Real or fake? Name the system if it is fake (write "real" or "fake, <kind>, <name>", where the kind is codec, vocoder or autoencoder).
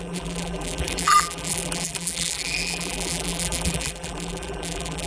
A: fake, vocoder, BigVGAN v2